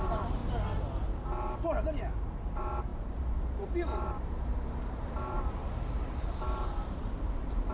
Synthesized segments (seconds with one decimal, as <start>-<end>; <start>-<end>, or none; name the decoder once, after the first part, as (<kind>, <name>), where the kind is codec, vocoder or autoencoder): 0.0-0.4 (vocoder, BigVGAN v2); 1.8-7.7